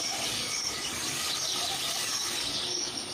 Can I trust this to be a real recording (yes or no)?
no